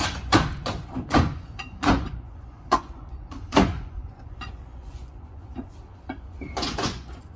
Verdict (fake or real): fake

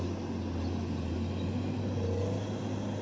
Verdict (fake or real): real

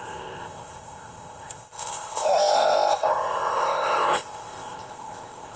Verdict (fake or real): fake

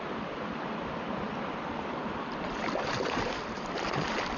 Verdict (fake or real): real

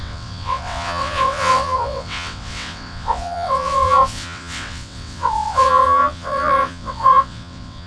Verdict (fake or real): fake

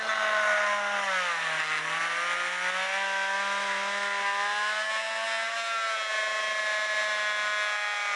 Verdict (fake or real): real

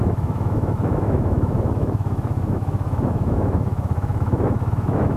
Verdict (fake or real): fake